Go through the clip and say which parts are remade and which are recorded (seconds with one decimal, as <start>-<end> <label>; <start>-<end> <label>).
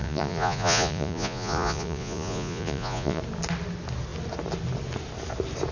0.0-3.2 remade; 3.2-5.7 recorded